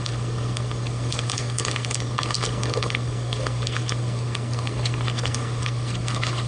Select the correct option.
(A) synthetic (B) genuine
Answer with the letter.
A